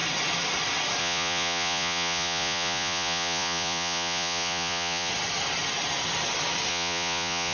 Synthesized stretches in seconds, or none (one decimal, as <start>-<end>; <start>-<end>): 1.0-5.1; 6.7-7.5